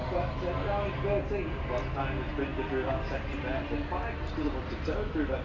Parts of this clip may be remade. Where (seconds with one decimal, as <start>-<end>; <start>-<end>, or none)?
none